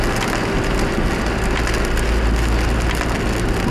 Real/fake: real